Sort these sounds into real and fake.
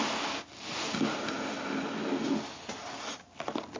real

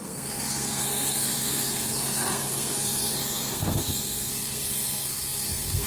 fake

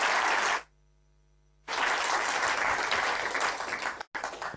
real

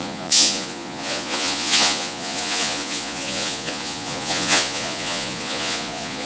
fake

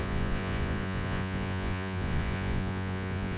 fake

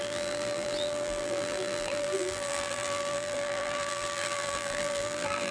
fake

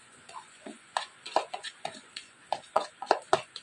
fake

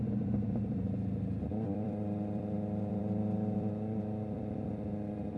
fake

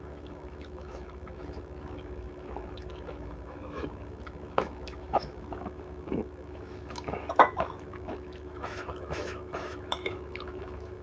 fake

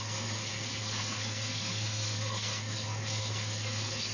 fake